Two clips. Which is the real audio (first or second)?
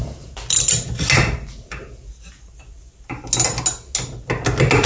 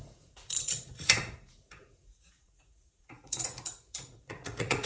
first